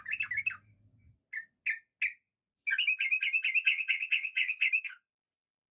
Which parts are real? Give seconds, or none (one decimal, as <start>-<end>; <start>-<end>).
0.0-3.6; 4.7-5.7